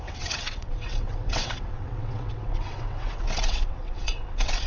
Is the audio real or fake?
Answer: fake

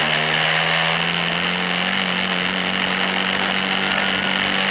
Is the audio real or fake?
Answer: real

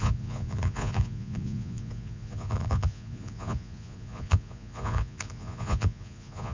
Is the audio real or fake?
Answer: fake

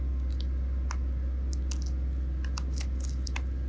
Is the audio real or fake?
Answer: real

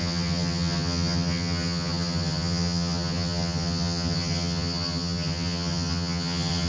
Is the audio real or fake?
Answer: fake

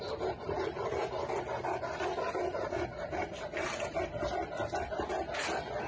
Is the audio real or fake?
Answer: real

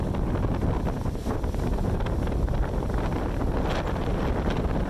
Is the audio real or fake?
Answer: real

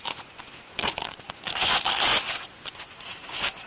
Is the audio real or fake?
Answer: fake